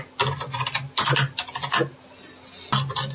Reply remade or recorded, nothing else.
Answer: recorded